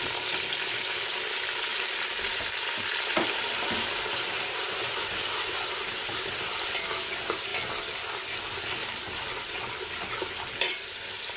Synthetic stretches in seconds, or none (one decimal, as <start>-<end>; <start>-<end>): 0.0-7.5; 8.4-11.4